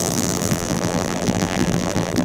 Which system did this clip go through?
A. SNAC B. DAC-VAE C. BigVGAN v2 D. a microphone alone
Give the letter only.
C